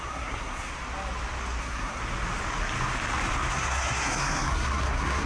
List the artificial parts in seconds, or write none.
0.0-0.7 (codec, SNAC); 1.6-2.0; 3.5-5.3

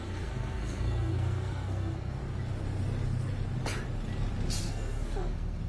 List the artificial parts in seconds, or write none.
0.0-2.2 (codec, SNAC); 4.6-5.7

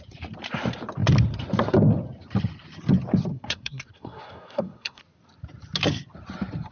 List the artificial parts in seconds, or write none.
3.3-5.0 (codec, SNAC)